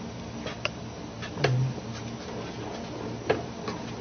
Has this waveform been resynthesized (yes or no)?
no